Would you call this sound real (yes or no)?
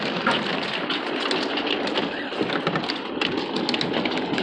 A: yes